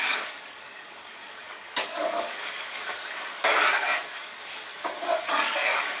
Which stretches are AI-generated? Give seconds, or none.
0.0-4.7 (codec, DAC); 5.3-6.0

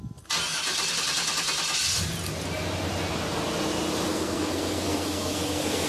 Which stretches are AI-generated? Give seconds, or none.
4.1-5.9 (codec, SNAC)

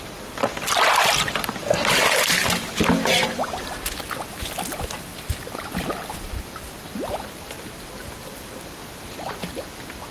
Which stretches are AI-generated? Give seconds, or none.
none

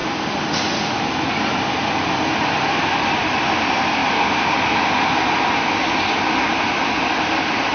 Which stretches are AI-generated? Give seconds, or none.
none